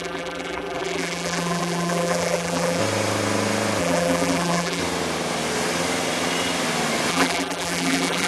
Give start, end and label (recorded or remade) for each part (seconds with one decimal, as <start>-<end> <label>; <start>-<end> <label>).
0.0-2.8 remade; 2.8-3.8 recorded; 3.8-4.8 remade; 4.8-7.1 recorded; 7.1-8.3 remade